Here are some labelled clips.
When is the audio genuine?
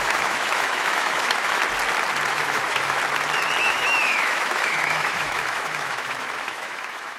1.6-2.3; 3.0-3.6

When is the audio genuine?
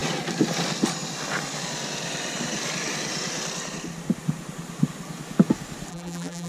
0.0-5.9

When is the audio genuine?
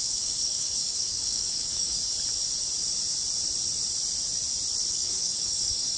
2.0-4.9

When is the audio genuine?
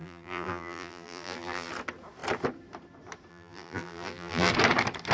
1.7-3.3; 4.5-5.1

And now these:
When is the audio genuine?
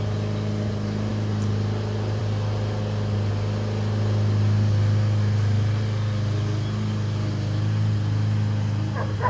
0.0-9.3